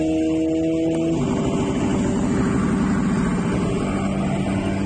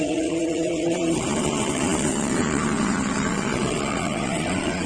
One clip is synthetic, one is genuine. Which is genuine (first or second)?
first